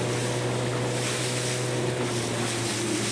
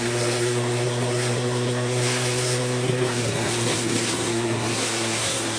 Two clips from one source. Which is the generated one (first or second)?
second